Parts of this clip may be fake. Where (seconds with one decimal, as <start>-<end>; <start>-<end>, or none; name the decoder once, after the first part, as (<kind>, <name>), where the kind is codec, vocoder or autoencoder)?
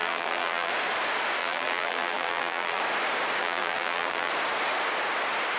0.0-0.7 (vocoder, BigVGAN v2); 1.4-2.8; 3.4-4.3